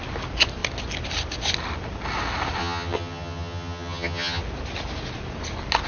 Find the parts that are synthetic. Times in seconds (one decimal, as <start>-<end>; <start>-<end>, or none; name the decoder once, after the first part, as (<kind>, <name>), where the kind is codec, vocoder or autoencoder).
2.6-4.4 (vocoder, HiFi-GAN)